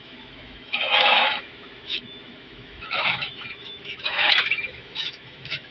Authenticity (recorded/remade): remade